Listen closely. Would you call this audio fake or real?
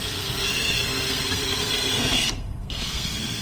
fake